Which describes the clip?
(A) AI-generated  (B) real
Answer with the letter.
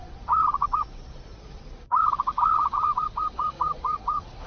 A